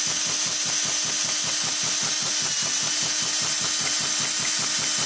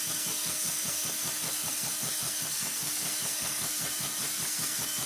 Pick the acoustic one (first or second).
first